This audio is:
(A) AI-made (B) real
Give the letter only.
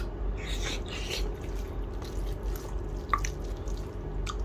B